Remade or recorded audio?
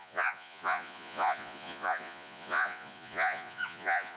remade